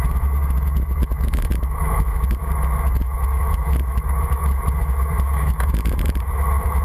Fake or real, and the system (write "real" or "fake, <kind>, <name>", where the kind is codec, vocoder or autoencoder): fake, autoencoder, DAC-VAE